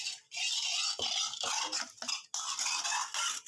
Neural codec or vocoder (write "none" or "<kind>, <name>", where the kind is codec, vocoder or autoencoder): none